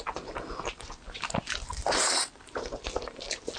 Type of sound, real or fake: real